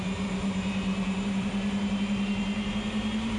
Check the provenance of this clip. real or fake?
fake